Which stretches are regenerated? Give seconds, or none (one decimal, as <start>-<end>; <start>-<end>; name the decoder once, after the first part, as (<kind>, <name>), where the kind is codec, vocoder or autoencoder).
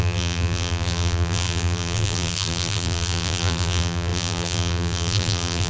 0.0-5.7 (vocoder, BigVGAN v2)